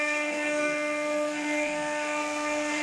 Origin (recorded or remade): remade